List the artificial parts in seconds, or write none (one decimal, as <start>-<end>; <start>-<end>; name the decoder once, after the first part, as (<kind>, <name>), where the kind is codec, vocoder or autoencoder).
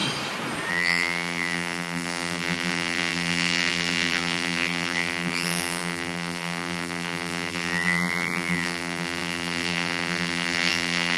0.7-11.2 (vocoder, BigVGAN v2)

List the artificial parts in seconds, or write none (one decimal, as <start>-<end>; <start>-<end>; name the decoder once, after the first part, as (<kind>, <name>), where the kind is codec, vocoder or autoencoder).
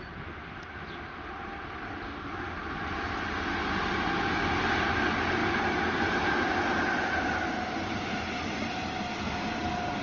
none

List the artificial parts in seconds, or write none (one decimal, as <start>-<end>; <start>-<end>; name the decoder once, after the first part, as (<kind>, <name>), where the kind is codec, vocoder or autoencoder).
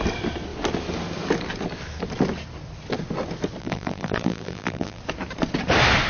3.6-5.0 (vocoder, BigVGAN v2)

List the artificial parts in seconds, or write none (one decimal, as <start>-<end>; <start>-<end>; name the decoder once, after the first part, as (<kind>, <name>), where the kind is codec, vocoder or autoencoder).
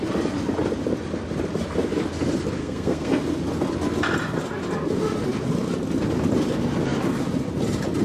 2.6-3.2 (codec, SNAC)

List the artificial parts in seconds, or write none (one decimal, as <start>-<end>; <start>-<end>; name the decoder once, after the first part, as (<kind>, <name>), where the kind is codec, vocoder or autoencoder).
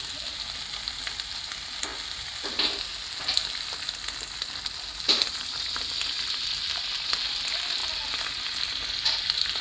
none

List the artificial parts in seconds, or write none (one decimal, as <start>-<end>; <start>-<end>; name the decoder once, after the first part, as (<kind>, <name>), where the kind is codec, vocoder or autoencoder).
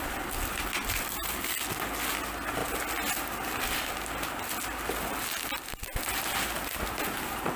none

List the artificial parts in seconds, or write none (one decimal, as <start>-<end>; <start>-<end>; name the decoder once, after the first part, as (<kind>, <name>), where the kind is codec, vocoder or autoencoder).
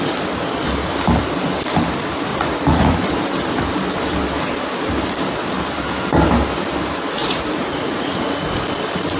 2.3-3.1 (vocoder, Vocos); 7.2-8.6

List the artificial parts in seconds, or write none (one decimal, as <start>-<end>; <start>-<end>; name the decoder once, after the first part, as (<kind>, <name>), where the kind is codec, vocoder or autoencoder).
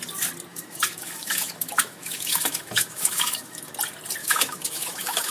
0.5-3.7 (autoencoder, DAC-VAE); 4.2-5.3